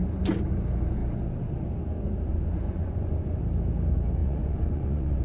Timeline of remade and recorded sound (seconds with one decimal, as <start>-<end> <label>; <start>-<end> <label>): 0.0-2.3 recorded; 2.3-3.4 remade; 3.4-4.2 recorded; 4.2-5.2 remade